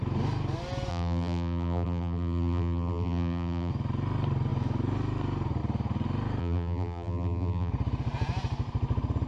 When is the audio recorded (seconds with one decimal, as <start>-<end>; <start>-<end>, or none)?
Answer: 0.0-0.9; 3.7-6.4; 7.7-9.3